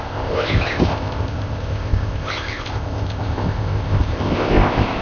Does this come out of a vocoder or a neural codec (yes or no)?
yes